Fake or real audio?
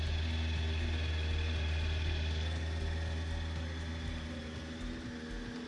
real